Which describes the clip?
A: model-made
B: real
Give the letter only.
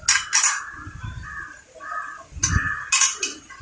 B